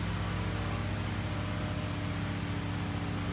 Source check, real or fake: real